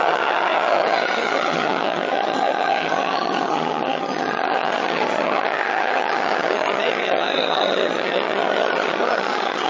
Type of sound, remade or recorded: remade